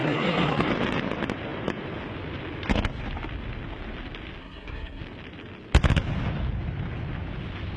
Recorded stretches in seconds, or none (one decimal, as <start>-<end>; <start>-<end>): 0.7-4.4; 5.0-7.8